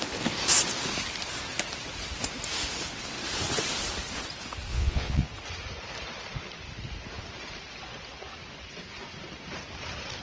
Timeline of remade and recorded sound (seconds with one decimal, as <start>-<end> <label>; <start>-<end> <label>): 0.0-4.7 recorded; 4.7-5.3 remade; 5.3-10.2 recorded